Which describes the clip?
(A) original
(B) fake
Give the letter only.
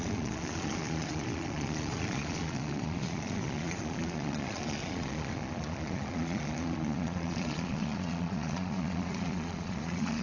B